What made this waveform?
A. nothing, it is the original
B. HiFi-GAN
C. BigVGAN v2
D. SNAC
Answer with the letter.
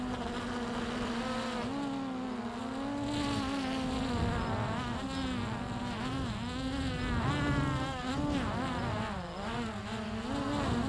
A